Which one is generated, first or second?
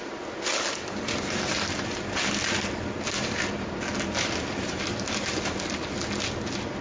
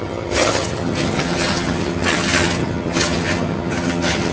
second